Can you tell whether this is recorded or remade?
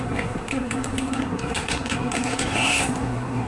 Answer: remade